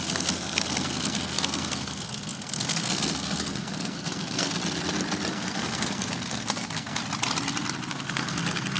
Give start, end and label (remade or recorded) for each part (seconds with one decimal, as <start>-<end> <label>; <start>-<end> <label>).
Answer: 0.0-4.6 remade; 4.6-5.3 recorded; 5.3-7.0 remade; 7.0-7.9 recorded; 7.9-8.8 remade